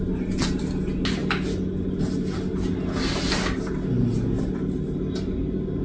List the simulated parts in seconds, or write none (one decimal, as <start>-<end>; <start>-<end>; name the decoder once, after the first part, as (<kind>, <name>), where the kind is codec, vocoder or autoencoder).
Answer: none